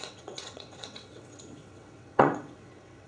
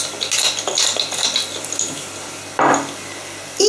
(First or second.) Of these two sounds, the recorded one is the second